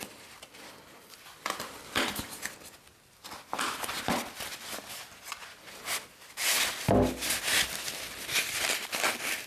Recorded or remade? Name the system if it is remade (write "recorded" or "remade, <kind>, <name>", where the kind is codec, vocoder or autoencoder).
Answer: recorded